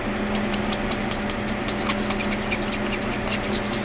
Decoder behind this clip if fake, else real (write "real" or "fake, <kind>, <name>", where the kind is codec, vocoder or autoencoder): real